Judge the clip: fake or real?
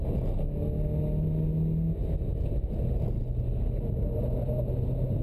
real